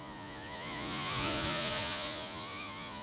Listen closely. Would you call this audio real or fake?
fake